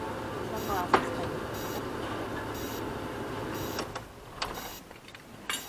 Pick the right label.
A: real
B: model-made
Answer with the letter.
A